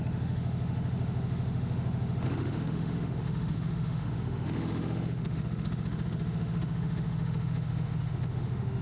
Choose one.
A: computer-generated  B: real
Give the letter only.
A